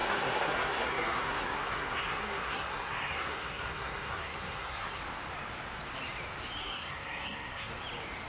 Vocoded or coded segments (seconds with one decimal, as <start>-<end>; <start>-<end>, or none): 0.0-5.0; 6.6-7.7